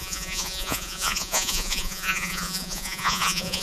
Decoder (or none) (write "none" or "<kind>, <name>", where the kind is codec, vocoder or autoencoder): vocoder, Vocos